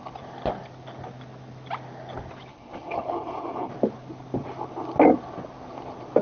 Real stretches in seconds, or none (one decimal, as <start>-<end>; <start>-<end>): 0.0-2.5; 3.7-6.2